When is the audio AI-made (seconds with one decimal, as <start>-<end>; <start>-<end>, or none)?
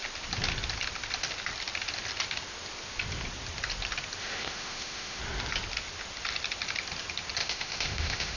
4.2-5.2; 7.4-8.4